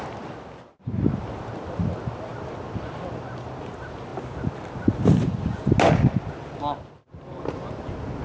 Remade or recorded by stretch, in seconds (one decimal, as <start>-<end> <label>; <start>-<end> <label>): 0.0-8.2 recorded